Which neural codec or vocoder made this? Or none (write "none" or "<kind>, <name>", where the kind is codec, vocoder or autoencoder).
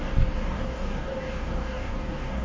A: codec, DAC